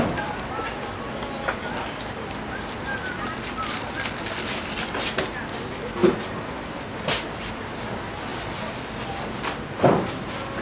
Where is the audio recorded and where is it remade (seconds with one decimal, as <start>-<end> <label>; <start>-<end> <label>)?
0.0-10.6 recorded